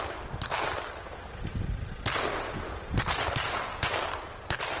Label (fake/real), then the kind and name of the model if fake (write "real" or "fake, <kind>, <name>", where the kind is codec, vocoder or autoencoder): real